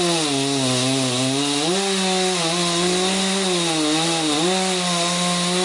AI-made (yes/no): no